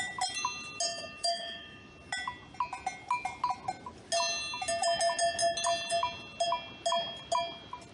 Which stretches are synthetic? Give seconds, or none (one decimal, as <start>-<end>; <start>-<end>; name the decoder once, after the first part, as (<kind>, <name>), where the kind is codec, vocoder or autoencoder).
0.9-1.9 (autoencoder, DAC-VAE)